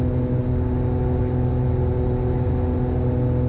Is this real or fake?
real